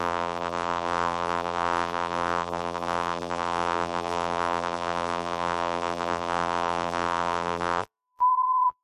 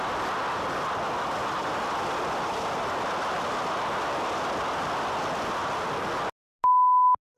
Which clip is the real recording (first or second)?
second